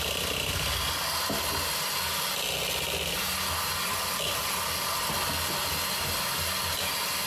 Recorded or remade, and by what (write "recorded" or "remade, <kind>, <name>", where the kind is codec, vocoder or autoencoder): recorded